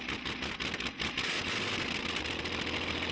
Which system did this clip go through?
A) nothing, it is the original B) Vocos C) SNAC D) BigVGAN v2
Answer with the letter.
A